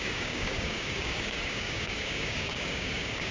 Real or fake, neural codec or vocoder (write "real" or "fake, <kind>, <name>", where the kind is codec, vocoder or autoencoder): fake, codec, DAC